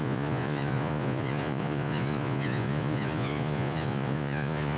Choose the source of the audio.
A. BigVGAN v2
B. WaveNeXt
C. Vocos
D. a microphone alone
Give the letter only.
C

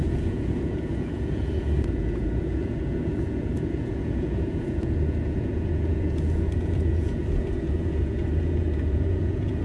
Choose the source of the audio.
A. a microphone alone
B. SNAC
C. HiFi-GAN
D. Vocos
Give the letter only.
D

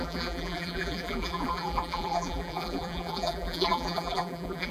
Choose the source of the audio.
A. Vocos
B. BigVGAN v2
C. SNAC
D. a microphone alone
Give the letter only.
B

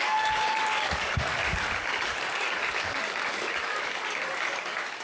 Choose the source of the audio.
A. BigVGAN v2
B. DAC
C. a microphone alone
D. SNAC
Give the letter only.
B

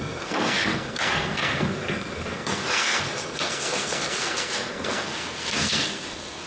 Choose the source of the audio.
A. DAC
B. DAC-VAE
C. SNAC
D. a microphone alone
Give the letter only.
C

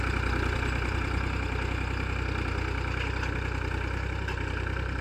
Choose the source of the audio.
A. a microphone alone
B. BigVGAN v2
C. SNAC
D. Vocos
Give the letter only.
A